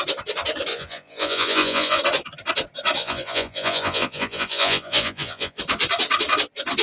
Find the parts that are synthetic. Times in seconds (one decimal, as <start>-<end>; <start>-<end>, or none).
0.7-2.0; 3.0-5.6